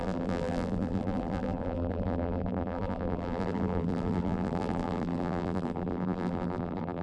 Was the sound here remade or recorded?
remade